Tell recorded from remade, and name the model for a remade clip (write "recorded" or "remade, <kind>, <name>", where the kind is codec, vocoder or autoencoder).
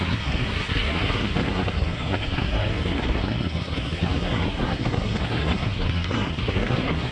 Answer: remade, codec, SNAC